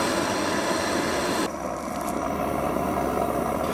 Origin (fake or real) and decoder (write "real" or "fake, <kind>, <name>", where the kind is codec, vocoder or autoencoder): real